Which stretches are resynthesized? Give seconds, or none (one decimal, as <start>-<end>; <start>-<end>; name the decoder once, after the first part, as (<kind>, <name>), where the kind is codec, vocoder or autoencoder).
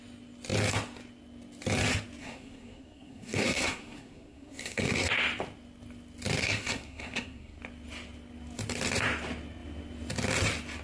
2.2-5.1 (codec, SNAC); 6.4-7.6